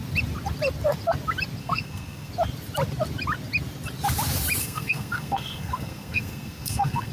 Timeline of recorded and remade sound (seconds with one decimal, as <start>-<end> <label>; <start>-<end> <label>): 0.0-1.6 recorded; 1.6-2.3 remade; 2.3-4.6 recorded; 4.6-7.1 remade